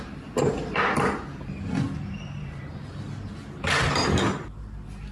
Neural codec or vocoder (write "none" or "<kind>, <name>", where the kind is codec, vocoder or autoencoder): none